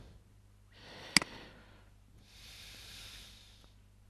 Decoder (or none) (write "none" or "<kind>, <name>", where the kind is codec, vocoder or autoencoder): none